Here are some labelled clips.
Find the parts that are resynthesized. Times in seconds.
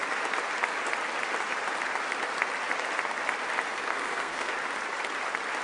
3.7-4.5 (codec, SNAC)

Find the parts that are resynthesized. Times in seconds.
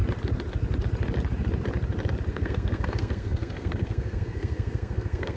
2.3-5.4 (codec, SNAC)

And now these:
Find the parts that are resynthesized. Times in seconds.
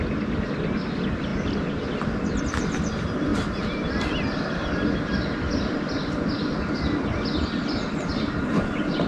none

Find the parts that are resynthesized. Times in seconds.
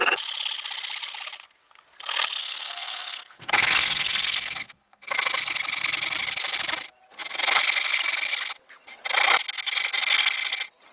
2.4-5.1 (codec, SNAC)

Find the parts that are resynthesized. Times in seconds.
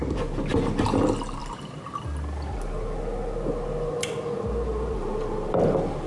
none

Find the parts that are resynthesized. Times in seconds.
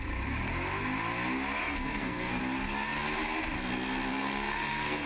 1.6-2.4 (codec, SNAC); 4.1-5.1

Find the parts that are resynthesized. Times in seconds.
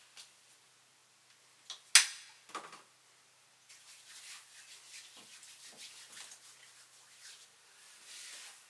none